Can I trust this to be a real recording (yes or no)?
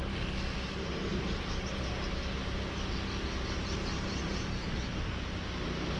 yes